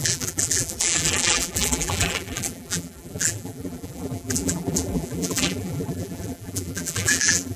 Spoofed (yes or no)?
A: yes